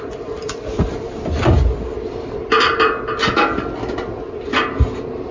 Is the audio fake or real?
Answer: real